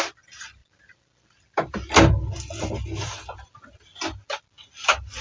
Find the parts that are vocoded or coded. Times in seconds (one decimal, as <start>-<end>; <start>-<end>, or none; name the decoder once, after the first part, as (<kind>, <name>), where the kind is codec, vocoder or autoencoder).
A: none